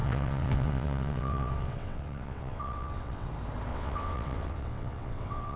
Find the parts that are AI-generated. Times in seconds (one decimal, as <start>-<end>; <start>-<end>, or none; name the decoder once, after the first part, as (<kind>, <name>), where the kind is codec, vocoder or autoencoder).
0.0-3.3 (vocoder, WaveNeXt); 3.7-5.6